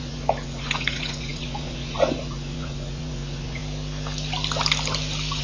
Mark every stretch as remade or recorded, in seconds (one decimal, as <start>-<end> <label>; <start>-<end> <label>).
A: 0.0-3.6 remade; 3.6-5.4 recorded